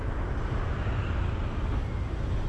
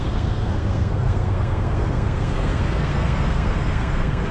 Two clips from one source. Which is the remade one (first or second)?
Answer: second